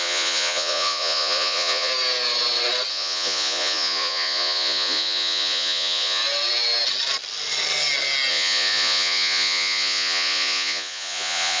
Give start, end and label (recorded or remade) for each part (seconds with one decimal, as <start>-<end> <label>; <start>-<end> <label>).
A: 0.0-1.9 remade; 1.9-2.9 recorded; 2.9-6.2 remade; 6.2-8.3 recorded; 8.3-11.6 remade